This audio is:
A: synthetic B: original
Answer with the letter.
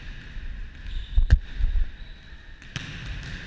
B